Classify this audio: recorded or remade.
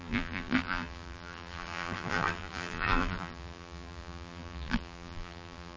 remade